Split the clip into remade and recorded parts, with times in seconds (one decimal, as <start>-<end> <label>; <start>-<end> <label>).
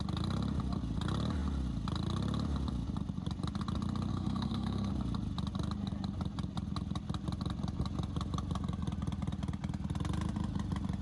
0.0-4.1 recorded; 4.1-4.9 remade; 4.9-11.0 recorded